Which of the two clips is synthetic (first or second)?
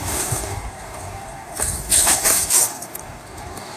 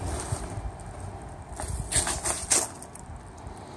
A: first